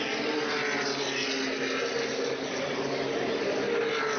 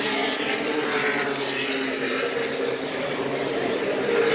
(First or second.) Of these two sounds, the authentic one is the first